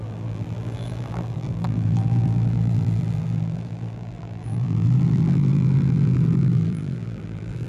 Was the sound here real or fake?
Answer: fake